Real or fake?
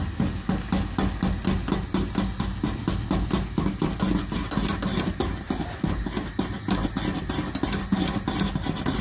real